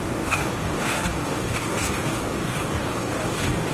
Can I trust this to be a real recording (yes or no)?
no